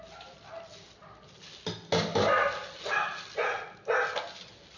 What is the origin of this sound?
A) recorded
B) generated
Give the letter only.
A